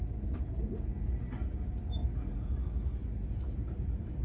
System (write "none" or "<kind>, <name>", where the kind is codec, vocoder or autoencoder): none